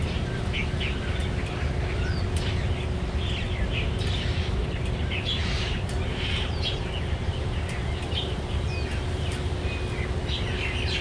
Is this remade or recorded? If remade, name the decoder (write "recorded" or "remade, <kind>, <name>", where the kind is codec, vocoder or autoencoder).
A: recorded